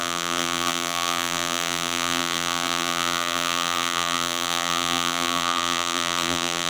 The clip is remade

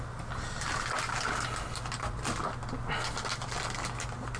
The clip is recorded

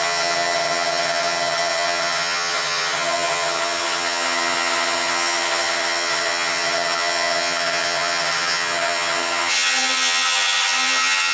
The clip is remade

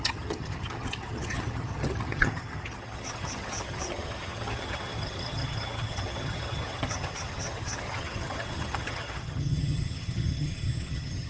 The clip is remade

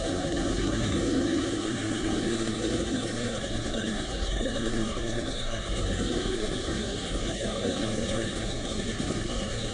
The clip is remade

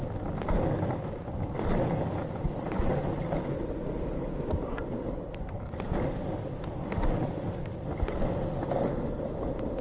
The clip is recorded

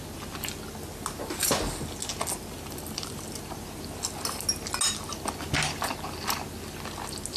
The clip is recorded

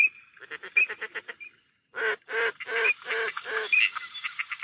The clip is recorded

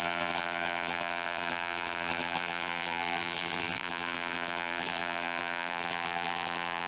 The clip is remade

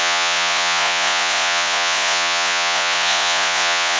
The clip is remade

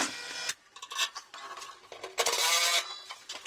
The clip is recorded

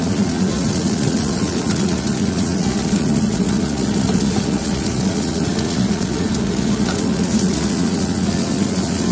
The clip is remade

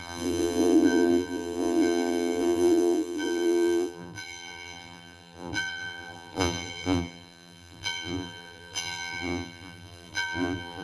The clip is remade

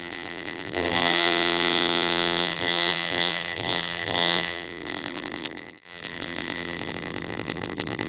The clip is remade